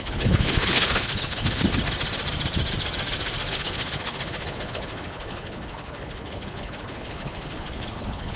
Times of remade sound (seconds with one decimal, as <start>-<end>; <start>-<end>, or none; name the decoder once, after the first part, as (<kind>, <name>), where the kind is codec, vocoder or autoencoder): 0.0-1.6 (codec, HILCodec); 3.5-8.4